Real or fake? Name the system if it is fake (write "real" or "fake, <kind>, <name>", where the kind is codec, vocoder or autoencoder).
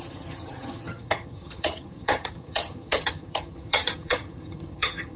fake, vocoder, HiFi-GAN